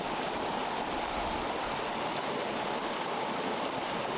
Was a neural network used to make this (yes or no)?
no